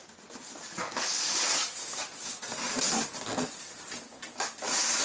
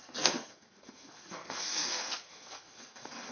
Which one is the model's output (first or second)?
second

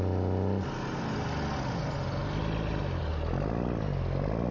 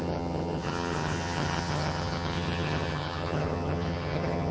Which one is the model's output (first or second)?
second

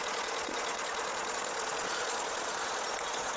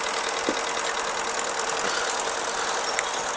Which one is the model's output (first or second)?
first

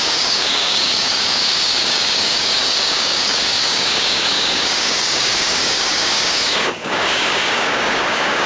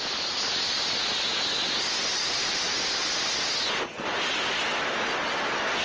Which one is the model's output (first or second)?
first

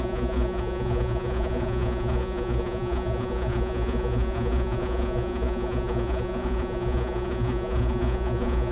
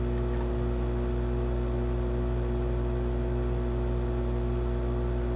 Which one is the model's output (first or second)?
first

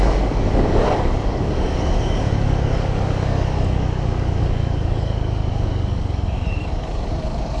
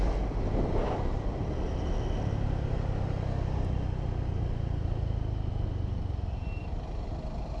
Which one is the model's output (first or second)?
first